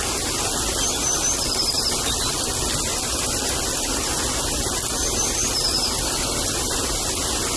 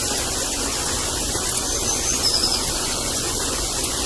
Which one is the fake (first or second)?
second